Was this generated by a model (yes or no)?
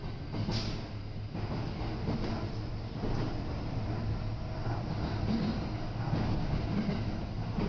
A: no